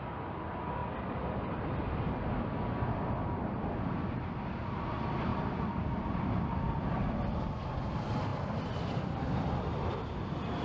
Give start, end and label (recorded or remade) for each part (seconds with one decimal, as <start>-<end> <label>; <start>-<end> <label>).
0.0-10.6 recorded